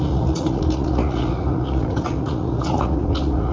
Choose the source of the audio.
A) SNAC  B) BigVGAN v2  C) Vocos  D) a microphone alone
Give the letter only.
C